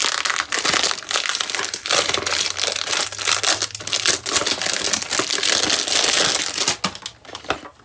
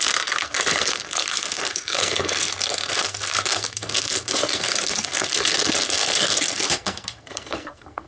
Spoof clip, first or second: second